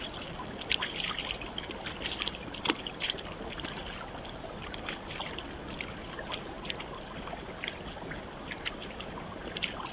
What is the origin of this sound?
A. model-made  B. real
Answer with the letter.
B